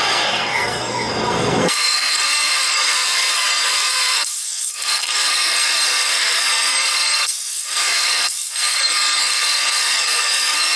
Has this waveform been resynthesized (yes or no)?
yes